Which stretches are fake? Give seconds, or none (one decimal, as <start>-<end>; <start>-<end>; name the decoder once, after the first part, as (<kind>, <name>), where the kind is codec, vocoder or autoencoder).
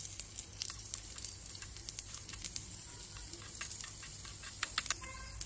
0.5-2.9 (vocoder, BigVGAN v2)